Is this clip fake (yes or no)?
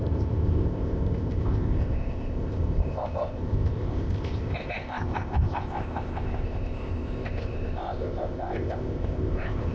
yes